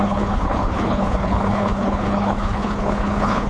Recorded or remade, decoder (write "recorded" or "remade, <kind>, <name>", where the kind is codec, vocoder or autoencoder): remade, codec, HILCodec